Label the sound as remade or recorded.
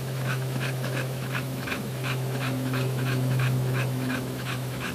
remade